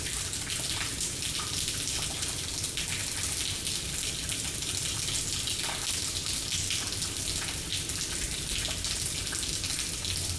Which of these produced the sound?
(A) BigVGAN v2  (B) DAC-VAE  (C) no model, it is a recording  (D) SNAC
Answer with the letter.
C